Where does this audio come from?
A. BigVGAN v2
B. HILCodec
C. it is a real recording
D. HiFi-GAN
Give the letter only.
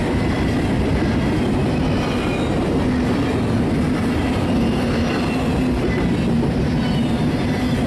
C